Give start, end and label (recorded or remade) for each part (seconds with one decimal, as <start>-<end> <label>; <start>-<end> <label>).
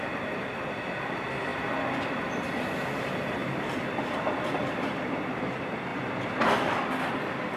0.0-1.5 remade; 1.5-2.2 recorded; 2.2-3.4 remade; 3.4-4.5 recorded; 4.5-7.6 remade